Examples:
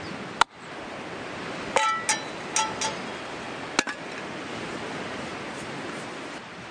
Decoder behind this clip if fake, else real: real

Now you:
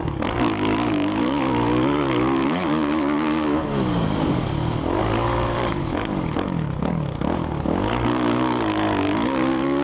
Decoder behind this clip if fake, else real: fake, codec, DAC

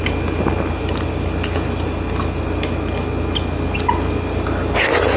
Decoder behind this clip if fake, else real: real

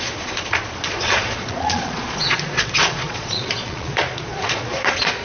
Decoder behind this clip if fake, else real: fake, vocoder, Vocos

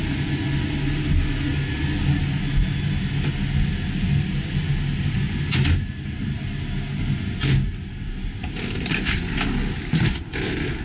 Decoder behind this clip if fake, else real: real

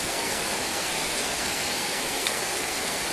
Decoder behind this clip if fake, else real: fake, codec, SNAC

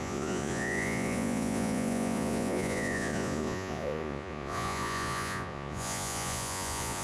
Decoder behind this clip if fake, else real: fake, vocoder, Vocos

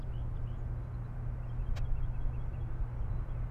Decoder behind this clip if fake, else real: real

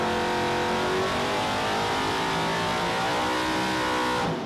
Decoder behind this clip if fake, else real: fake, vocoder, BigVGAN v2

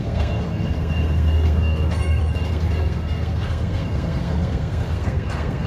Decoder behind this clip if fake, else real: fake, codec, SNAC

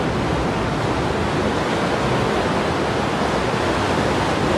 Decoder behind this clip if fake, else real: real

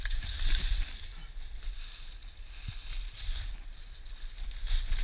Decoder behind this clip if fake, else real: real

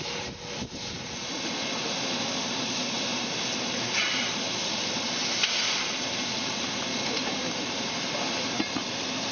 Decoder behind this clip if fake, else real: fake, vocoder, BigVGAN v2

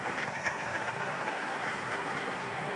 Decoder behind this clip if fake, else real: fake, codec, SNAC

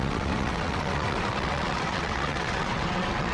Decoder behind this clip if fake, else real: fake, vocoder, WaveNeXt